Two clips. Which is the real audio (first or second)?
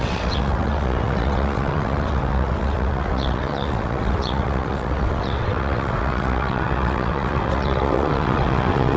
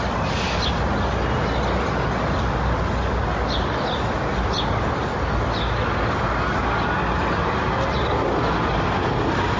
second